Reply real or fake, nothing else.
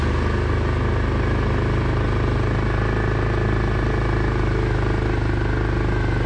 real